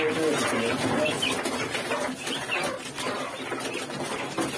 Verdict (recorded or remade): recorded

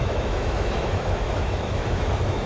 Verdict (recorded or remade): remade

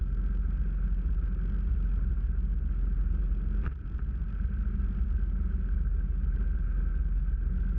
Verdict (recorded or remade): recorded